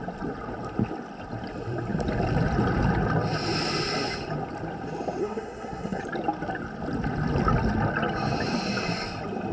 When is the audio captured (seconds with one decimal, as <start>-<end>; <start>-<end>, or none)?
0.0-5.2; 6.0-9.5